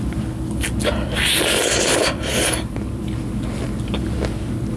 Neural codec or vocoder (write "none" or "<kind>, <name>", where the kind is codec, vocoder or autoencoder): none